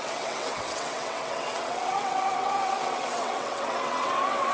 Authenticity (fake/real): fake